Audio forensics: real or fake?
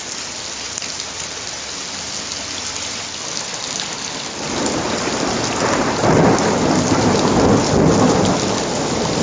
real